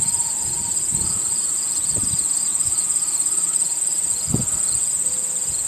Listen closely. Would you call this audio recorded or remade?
remade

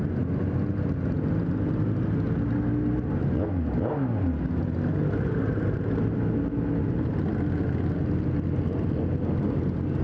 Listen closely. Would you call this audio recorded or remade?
recorded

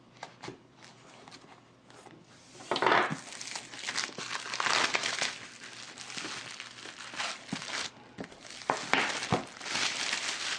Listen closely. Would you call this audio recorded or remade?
recorded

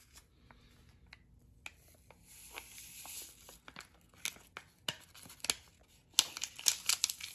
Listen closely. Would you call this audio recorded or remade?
recorded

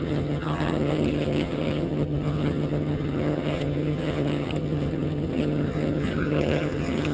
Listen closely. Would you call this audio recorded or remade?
remade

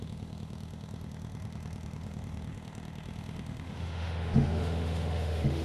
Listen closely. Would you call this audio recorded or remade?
remade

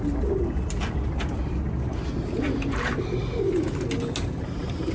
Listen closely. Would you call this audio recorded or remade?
recorded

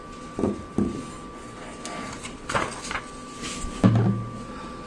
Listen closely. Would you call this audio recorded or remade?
recorded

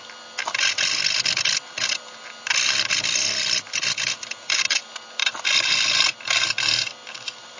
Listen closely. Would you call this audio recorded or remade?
recorded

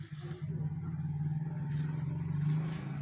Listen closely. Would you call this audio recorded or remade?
recorded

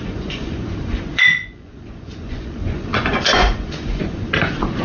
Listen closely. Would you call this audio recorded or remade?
remade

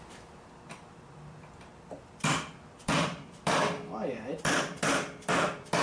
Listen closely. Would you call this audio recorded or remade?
remade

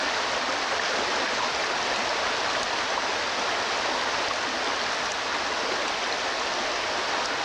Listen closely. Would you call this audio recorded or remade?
recorded